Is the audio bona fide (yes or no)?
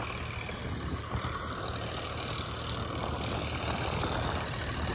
yes